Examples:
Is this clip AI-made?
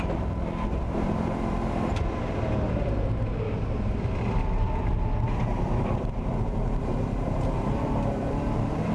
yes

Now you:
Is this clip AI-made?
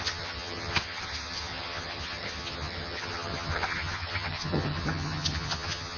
yes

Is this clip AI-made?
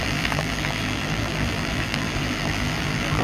yes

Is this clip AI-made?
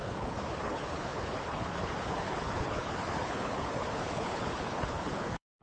yes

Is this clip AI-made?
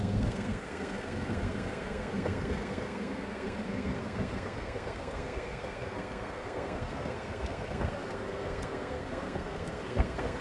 yes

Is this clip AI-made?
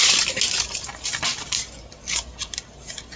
no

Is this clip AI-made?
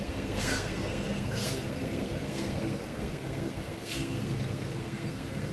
yes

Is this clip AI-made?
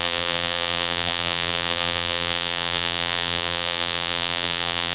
yes